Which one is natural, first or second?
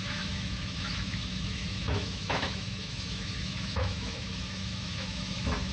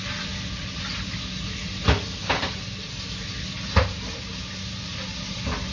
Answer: second